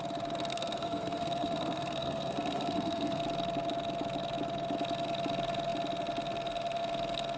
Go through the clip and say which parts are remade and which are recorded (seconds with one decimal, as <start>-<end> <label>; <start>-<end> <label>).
0.0-0.5 recorded; 0.5-3.2 remade; 3.2-7.4 recorded